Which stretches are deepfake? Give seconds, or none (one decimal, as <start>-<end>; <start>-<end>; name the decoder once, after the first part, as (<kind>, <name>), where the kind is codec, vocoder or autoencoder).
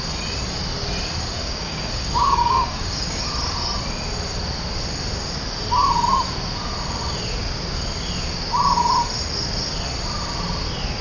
1.4-3.2 (codec, DAC)